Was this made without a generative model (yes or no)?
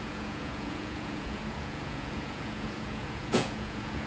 no